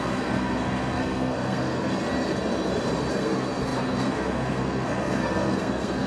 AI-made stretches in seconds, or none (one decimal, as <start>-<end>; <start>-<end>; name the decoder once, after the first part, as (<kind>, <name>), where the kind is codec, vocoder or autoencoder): 0.0-1.9 (codec, SNAC); 3.1-6.1